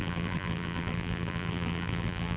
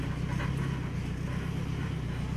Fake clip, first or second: first